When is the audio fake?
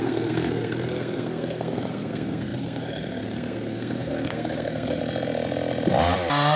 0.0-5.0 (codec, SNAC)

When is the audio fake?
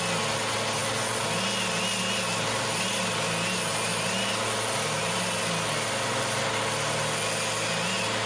none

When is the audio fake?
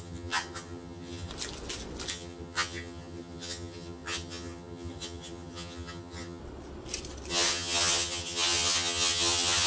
0.0-1.3 (vocoder, HiFi-GAN); 2.1-6.4; 7.3-9.7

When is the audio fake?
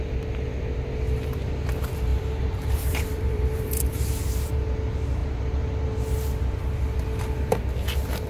2.1-4.1 (vocoder, BigVGAN v2)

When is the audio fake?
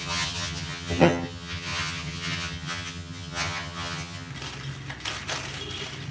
0.0-4.3 (vocoder, HiFi-GAN)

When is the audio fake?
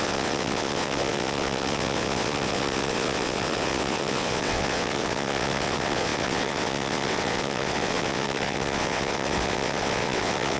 0.0-10.6 (vocoder, WaveNeXt)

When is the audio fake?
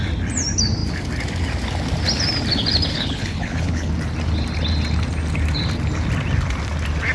2.9-3.9 (codec, HILCodec)